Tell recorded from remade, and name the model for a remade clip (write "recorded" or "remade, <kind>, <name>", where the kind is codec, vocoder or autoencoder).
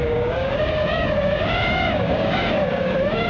remade, codec, DAC